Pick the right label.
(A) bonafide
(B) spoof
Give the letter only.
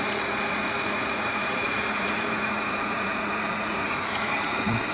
B